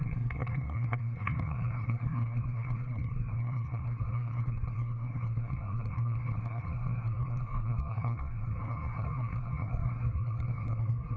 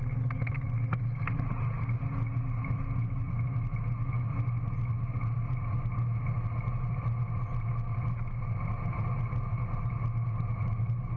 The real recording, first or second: second